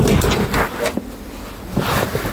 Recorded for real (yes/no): yes